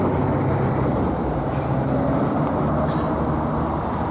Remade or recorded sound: recorded